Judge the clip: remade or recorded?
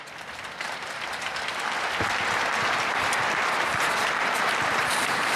remade